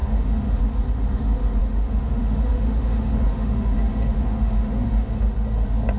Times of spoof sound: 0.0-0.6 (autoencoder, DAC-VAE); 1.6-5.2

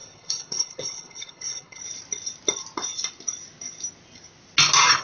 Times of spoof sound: 0.0-1.8 (codec, HILCodec)

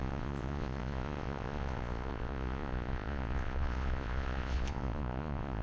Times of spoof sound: 0.0-5.6 (vocoder, Vocos)

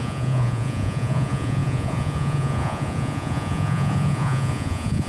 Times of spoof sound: 0.0-5.1 (vocoder, Vocos)

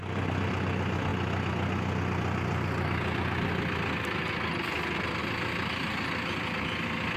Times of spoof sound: none

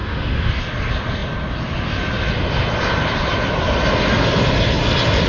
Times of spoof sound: 0.0-0.5 (autoencoder, DAC-VAE)

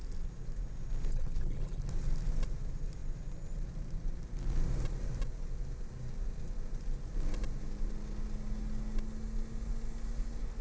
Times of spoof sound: 1.1-1.9 (codec, HILCodec)

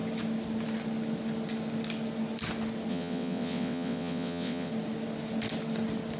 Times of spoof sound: 2.9-4.7 (vocoder, WaveNeXt)